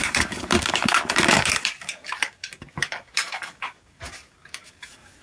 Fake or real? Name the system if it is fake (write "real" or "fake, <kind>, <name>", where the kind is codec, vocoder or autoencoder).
fake, codec, DAC